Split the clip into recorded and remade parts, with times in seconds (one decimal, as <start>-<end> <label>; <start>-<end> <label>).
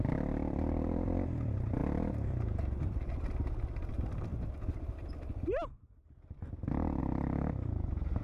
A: 0.0-1.8 remade; 1.8-3.9 recorded; 3.9-4.3 remade; 4.3-7.0 recorded; 7.0-8.2 remade